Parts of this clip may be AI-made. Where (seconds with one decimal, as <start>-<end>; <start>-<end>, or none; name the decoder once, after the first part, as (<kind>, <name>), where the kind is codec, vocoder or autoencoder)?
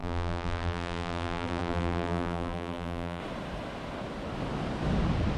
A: 0.0-3.2 (vocoder, BigVGAN v2)